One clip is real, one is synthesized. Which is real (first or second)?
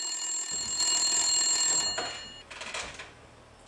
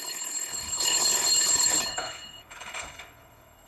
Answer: first